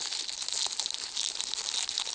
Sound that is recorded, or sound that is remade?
recorded